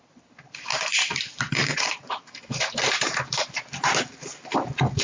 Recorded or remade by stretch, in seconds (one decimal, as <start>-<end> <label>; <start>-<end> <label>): 0.0-0.7 recorded; 0.7-3.7 remade; 3.7-5.0 recorded

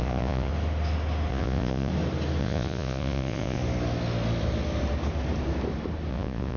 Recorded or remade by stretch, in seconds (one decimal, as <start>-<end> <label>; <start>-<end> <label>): 0.0-0.5 remade; 0.5-1.3 recorded; 1.3-1.9 remade; 1.9-2.4 recorded; 2.4-3.6 remade; 3.6-6.1 recorded; 6.1-6.6 remade

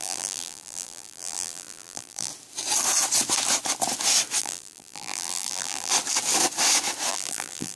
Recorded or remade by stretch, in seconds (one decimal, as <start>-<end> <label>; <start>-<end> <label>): 0.0-2.3 remade; 2.3-4.4 recorded; 4.4-5.9 remade; 5.9-7.1 recorded; 7.1-7.8 remade

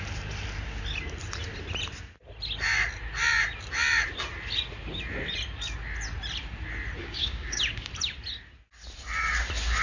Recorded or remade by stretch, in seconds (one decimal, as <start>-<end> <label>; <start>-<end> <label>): 0.0-7.0 recorded; 7.0-7.6 remade; 7.6-9.8 recorded